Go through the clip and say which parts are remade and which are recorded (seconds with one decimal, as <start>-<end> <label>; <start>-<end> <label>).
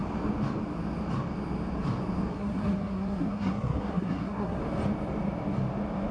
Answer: 0.0-2.3 recorded; 2.3-4.6 remade; 4.6-6.1 recorded